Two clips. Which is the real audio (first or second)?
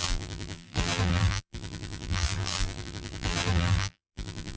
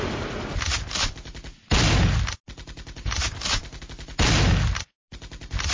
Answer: second